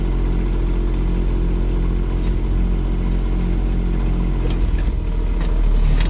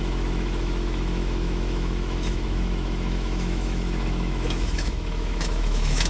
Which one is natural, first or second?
first